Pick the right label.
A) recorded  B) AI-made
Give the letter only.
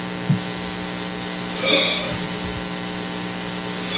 A